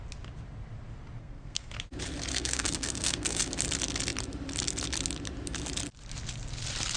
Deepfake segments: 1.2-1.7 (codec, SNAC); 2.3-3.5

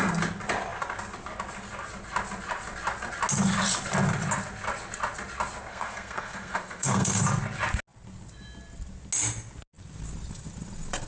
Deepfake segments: 5.7-7.2 (codec, SNAC)

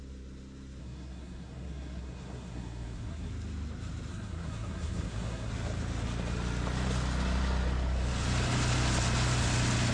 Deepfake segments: 0.8-3.3 (codec, SNAC); 4.1-5.5

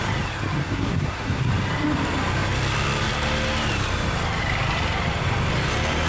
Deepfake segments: 0.6-1.5 (codec, SNAC)